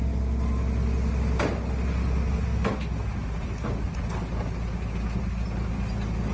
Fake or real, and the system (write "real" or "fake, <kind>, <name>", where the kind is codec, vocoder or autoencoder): real